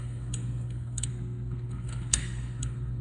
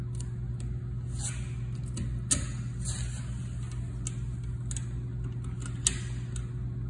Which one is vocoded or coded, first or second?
first